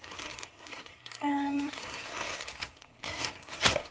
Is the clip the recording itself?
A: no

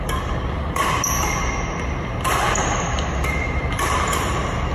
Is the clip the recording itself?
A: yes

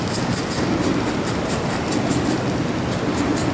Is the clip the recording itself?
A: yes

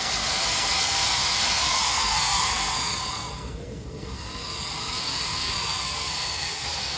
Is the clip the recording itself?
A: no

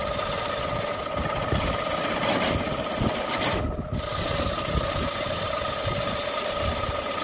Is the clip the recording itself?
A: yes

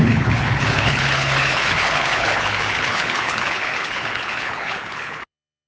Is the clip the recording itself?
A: no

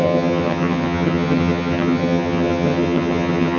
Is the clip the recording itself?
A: no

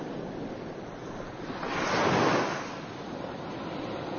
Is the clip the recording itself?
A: yes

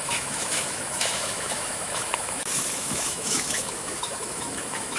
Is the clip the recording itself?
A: no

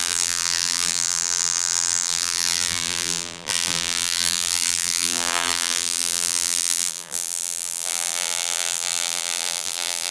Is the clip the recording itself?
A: no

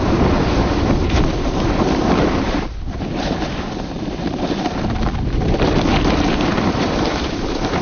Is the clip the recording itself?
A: no